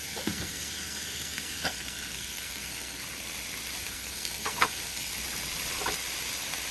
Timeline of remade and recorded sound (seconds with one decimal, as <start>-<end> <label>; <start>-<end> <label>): 0.0-3.0 remade; 3.0-3.8 recorded; 3.8-5.1 remade; 5.1-6.7 recorded